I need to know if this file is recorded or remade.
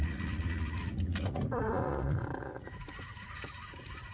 remade